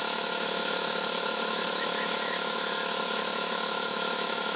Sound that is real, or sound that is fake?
fake